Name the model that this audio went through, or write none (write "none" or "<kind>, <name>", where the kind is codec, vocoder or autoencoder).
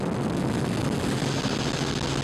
none